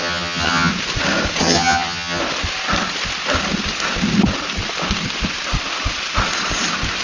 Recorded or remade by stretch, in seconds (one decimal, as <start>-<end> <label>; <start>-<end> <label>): 0.0-0.7 remade; 0.7-1.4 recorded; 1.4-2.2 remade; 2.2-7.0 recorded